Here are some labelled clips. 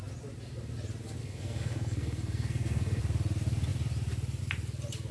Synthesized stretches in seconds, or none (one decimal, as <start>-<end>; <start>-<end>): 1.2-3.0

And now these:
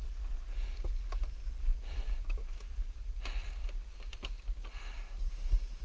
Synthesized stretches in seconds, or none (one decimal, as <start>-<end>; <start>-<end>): 1.7-5.2

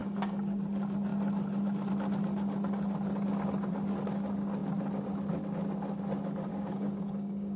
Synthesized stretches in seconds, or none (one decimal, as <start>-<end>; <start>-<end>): 0.0-0.6; 6.5-7.6

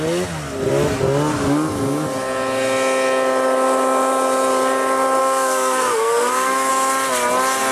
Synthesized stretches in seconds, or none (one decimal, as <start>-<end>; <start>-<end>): 5.2-6.7